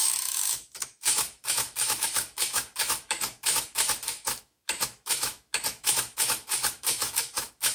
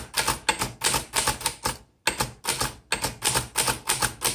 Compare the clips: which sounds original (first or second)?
second